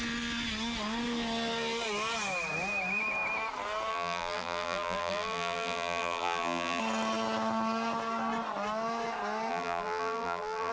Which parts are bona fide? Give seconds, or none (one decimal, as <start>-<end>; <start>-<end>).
0.0-3.9; 6.8-9.5